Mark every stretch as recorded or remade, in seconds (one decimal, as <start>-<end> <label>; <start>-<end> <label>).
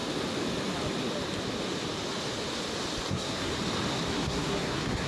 0.0-3.1 recorded; 3.1-3.5 remade; 3.5-4.1 recorded; 4.1-5.1 remade